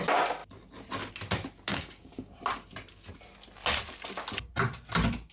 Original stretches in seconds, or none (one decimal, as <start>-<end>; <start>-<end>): 0.0-1.7; 2.4-5.3

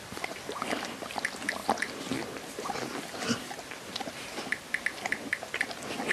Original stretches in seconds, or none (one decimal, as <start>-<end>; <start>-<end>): 0.0-6.1

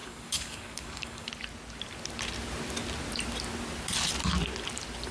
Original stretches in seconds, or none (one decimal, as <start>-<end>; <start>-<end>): 1.3-5.1